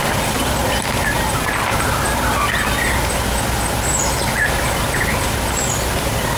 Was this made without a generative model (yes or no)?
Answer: yes